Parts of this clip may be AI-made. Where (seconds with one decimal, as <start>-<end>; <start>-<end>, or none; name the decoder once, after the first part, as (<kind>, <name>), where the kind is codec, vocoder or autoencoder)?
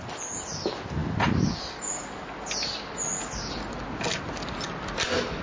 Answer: none